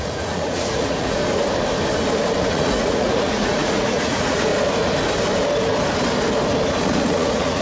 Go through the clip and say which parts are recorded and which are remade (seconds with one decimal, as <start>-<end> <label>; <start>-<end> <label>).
0.0-1.2 remade; 1.2-2.4 recorded; 2.4-4.5 remade; 4.5-6.8 recorded; 6.8-7.6 remade